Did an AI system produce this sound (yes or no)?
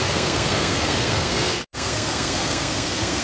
yes